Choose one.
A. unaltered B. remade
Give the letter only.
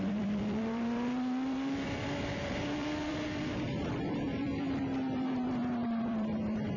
B